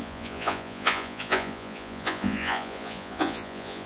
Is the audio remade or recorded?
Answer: remade